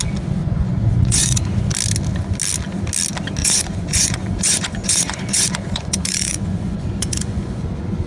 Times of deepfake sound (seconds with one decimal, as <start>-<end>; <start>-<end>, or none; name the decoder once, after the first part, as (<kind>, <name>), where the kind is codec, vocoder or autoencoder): 0.4-1.6 (vocoder, Vocos); 3.4-8.1